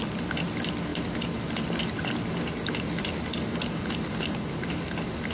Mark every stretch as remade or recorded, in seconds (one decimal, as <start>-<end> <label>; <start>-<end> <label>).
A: 0.0-3.3 recorded; 3.3-3.9 remade; 3.9-5.3 recorded